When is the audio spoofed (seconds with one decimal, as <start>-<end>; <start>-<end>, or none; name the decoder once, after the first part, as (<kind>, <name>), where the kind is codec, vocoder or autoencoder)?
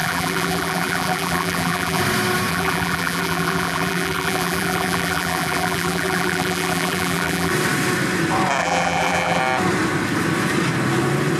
0.0-2.0 (vocoder, BigVGAN v2); 2.5-7.5; 8.6-9.4